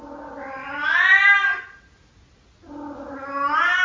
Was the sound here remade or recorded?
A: recorded